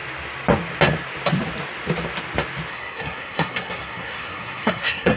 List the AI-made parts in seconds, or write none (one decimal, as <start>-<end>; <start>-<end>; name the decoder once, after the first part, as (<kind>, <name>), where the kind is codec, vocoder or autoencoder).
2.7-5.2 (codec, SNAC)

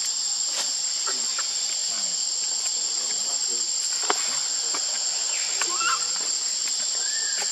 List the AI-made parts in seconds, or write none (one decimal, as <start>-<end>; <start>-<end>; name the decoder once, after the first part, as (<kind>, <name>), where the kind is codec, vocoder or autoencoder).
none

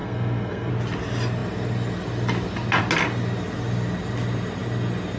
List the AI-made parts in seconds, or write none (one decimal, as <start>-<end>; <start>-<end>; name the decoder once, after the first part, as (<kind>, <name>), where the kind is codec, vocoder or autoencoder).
0.0-0.7 (codec, SNAC)